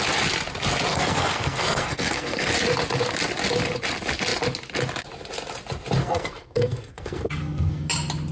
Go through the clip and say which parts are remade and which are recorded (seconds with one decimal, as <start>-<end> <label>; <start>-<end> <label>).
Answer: 0.0-0.9 recorded; 0.9-2.5 remade; 2.5-6.0 recorded; 6.0-7.9 remade; 7.9-8.3 recorded